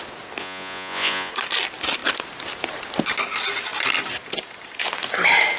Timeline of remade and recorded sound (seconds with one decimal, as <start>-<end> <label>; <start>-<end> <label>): 0.0-0.4 recorded; 0.4-1.3 remade; 1.3-5.6 recorded